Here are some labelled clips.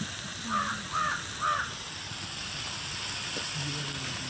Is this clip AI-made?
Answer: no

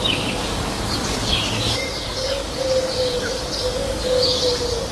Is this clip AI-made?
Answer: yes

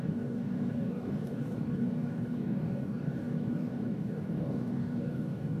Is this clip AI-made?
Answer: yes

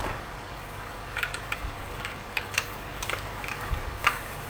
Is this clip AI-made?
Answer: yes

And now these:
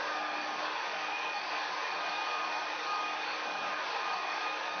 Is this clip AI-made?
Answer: yes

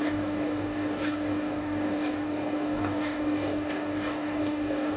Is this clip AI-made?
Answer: yes